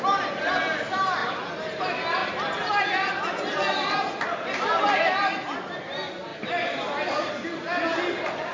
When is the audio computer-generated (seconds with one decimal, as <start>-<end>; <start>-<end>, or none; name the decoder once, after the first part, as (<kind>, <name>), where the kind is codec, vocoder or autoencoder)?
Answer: 1.2-1.8 (vocoder, BigVGAN v2); 6.3-7.3